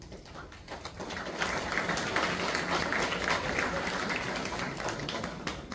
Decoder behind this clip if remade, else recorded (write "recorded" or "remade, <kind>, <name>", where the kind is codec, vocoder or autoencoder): recorded